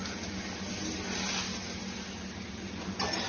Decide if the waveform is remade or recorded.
recorded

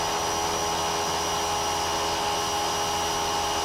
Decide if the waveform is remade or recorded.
recorded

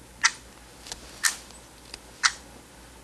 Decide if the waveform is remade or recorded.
recorded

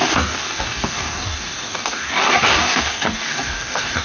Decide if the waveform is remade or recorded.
remade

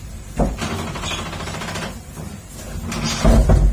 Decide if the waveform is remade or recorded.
remade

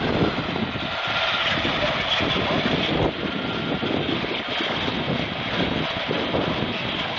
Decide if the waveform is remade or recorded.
recorded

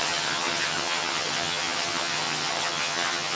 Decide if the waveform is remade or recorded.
remade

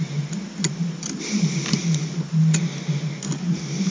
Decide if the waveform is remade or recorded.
recorded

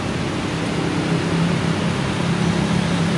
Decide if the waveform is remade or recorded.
recorded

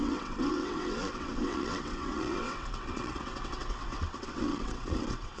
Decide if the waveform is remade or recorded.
remade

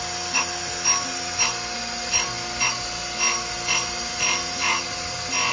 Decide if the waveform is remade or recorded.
recorded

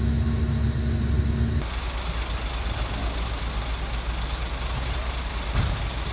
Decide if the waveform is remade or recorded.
recorded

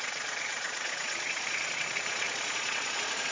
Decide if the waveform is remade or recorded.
remade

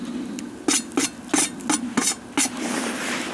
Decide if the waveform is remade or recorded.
recorded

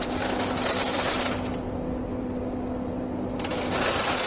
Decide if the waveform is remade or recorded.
recorded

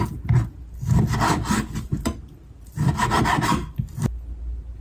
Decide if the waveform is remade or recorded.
recorded